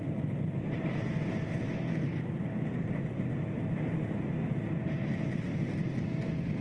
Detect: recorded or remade recorded